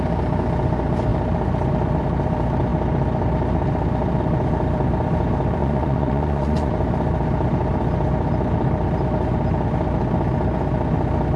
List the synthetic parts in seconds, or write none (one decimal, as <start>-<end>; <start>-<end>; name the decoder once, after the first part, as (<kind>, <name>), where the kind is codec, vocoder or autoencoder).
5.6-6.7 (vocoder, Vocos)